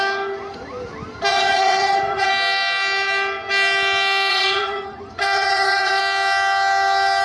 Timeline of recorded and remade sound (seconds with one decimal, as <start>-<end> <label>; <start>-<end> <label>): 0.0-1.3 recorded; 1.3-2.3 remade; 2.3-4.3 recorded; 4.3-6.0 remade; 6.0-7.2 recorded